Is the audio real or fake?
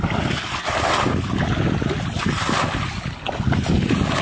real